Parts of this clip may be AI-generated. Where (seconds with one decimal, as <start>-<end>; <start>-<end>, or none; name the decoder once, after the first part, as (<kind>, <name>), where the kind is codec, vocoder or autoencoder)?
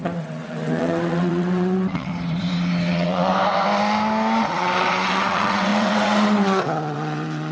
0.0-2.1 (vocoder, WaveNeXt); 2.9-3.3; 4.5-7.5